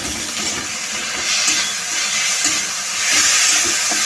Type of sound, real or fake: real